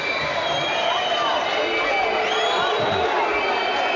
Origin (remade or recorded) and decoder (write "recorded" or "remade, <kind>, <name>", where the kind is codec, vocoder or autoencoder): recorded